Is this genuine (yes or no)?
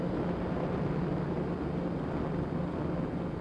yes